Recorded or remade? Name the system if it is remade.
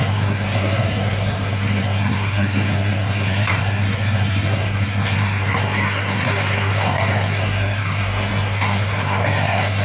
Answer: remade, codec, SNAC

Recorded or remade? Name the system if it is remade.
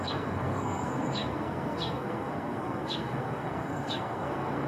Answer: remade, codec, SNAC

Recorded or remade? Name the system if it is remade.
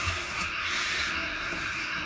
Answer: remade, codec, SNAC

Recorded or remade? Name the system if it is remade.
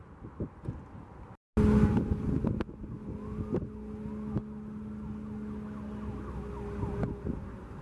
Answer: recorded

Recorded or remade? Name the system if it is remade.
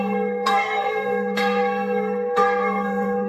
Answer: remade, codec, SNAC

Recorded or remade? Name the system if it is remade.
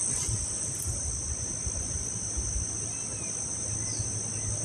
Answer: recorded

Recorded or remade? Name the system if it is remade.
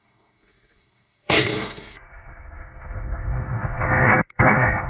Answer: remade, codec, SNAC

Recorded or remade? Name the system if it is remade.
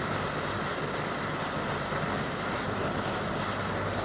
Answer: recorded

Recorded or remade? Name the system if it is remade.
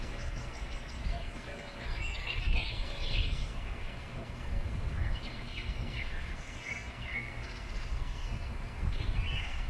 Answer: remade, codec, SNAC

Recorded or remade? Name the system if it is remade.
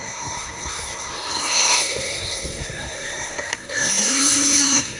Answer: remade, codec, SNAC